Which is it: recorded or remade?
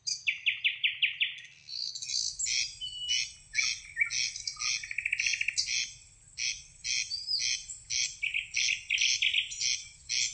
recorded